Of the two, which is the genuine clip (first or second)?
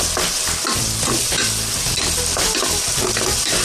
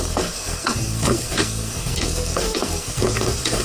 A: first